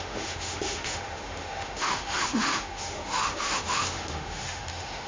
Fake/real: fake